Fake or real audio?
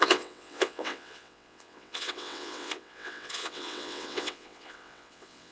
fake